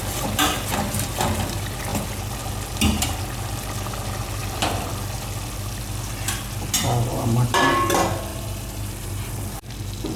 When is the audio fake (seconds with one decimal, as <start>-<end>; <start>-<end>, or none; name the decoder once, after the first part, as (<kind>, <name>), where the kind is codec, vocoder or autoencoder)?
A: 7.1-7.7 (vocoder, BigVGAN v2); 8.3-9.3